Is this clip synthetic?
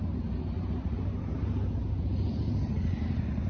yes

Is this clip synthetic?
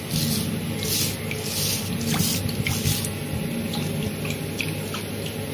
no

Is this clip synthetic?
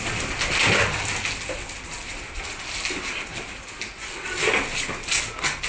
no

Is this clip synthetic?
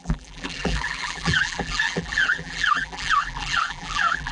yes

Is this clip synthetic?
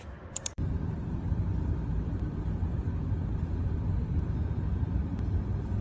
yes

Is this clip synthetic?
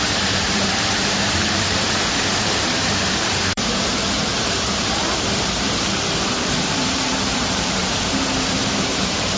yes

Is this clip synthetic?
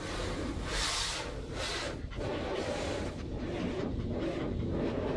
yes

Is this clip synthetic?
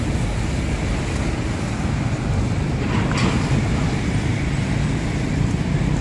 no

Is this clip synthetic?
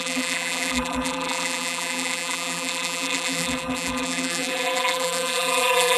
yes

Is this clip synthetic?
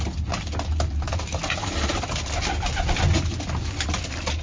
no